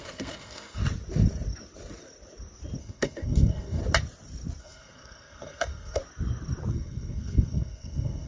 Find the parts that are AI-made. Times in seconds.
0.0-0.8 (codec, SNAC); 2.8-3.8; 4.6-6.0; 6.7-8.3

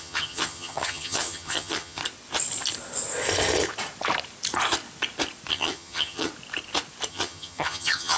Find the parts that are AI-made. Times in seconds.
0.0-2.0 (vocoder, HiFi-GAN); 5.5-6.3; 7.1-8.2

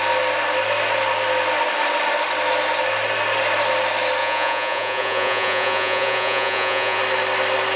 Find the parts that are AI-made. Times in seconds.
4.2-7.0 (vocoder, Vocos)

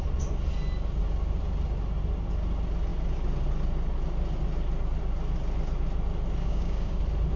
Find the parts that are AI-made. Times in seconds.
6.4-7.0 (codec, DAC)

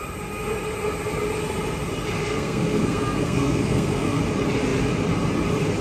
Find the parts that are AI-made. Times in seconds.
2.2-4.2 (codec, SNAC)

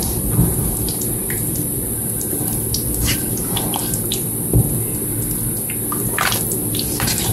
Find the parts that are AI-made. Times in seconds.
0.0-3.8 (vocoder, BigVGAN v2)

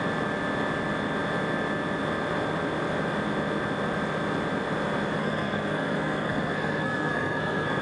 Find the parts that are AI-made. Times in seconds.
5.2-7.8 (codec, SNAC)

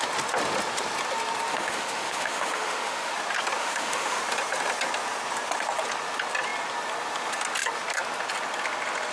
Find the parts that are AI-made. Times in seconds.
1.5-3.1 (autoencoder, DAC-VAE); 3.6-4.2